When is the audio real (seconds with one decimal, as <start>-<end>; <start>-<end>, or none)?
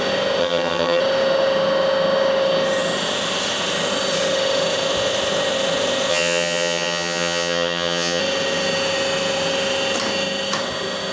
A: 0.0-0.4; 1.0-6.1; 8.2-11.1